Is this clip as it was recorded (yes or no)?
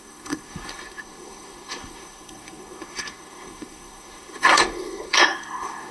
no